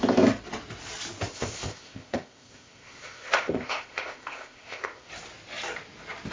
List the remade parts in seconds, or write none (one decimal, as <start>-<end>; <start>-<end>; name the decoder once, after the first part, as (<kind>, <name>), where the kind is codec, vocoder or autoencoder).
1.3-5.1 (codec, ZipCodec)